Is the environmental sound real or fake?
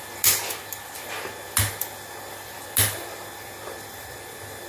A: real